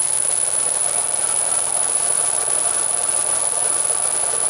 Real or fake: fake